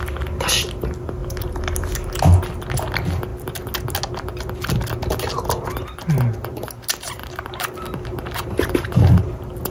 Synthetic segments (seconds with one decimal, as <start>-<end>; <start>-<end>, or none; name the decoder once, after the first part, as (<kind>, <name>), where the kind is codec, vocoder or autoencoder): 7.2-9.2 (vocoder, BigVGAN v2)